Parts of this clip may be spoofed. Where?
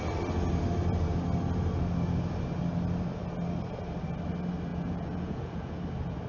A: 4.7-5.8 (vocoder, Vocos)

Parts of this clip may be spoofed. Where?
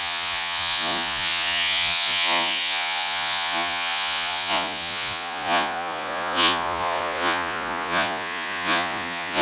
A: 0.0-9.4 (vocoder, Vocos)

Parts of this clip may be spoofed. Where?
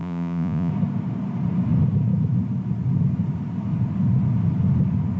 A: 0.0-0.7 (vocoder, Vocos)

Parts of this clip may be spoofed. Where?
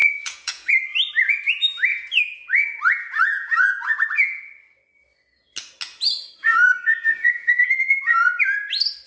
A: 0.0-0.7 (vocoder, Vocos); 1.9-4.4; 6.4-8.4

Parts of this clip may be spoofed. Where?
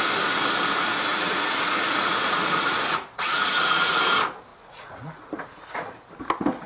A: 1.1-4.0 (vocoder, Vocos); 4.5-6.1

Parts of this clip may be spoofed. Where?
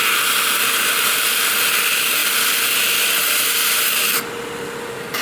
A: none